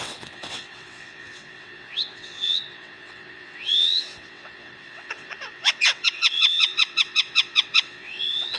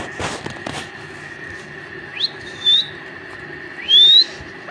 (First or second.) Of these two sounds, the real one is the second